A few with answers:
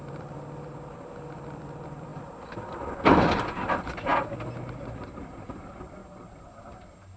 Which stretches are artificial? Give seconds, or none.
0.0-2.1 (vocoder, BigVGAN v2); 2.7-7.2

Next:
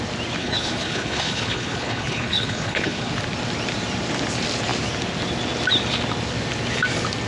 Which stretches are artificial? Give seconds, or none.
0.4-3.1 (codec, HILCodec)